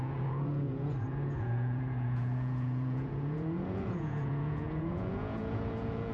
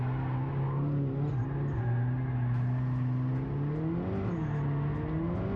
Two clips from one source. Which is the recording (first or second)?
second